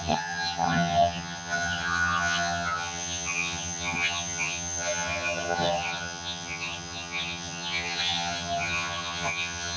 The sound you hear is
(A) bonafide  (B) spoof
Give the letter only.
B